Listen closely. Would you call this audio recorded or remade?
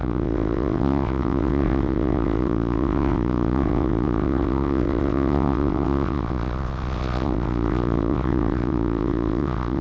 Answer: remade